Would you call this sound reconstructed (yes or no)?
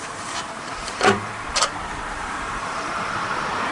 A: yes